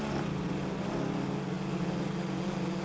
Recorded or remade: recorded